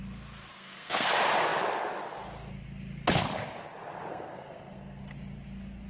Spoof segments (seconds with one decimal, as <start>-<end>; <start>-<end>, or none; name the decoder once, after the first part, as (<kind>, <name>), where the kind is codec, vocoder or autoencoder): 0.5-1.1 (codec, SNAC); 4.1-5.0